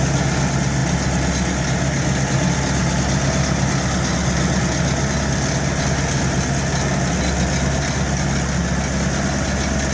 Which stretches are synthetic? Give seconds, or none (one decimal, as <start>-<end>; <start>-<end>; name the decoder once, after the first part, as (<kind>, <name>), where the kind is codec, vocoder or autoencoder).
none